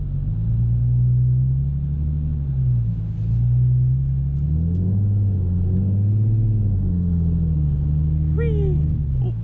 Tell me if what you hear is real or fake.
real